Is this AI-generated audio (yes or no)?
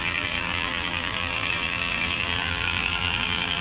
yes